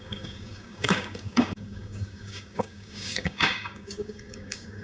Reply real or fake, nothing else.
fake